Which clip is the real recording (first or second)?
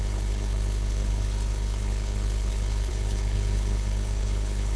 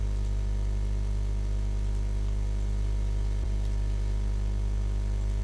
second